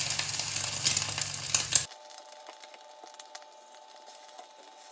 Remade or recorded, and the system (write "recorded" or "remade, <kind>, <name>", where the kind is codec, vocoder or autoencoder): recorded